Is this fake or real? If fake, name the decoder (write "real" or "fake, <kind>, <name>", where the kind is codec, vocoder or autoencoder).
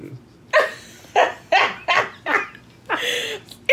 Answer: real